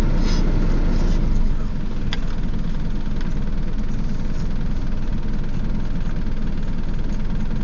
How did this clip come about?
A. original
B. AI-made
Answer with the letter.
A